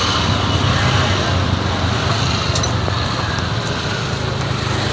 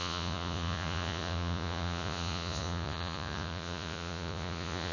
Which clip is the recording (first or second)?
first